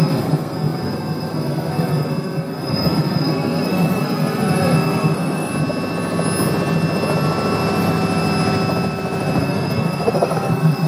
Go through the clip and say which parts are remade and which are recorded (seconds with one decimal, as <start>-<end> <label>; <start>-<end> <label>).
0.0-5.5 remade; 5.5-9.4 recorded; 9.4-10.9 remade

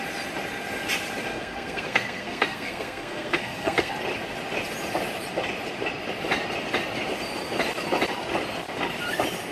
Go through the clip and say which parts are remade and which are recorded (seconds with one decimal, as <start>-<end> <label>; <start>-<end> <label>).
0.0-1.3 recorded; 1.3-3.9 remade; 3.9-9.5 recorded

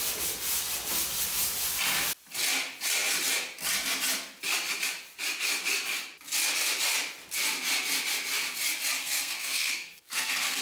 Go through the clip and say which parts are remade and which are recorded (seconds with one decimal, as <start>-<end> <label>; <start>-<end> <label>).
0.0-9.0 recorded; 9.0-10.6 remade

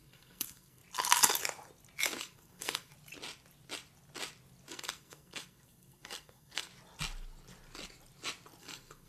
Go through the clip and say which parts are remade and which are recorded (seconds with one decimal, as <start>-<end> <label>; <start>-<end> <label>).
0.0-0.8 remade; 0.8-2.2 recorded; 2.2-2.9 remade; 2.9-4.7 recorded; 4.7-6.7 remade; 6.7-8.6 recorded; 8.6-9.1 remade

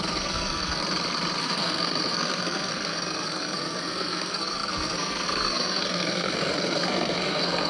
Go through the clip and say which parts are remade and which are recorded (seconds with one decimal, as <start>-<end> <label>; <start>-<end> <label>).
0.0-0.8 remade; 0.8-1.4 recorded; 1.4-7.7 remade

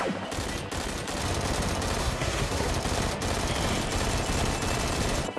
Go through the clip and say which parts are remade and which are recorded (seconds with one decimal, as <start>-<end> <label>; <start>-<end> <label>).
0.0-2.0 recorded; 2.0-2.7 remade; 2.7-5.4 recorded